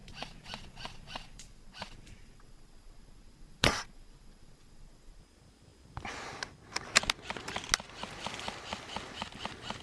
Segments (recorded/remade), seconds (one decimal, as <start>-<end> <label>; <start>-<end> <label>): 0.0-5.2 remade; 5.2-9.8 recorded